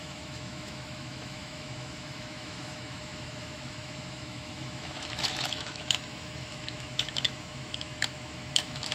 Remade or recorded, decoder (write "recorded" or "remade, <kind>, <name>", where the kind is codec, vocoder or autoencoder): remade, autoencoder, DAC-VAE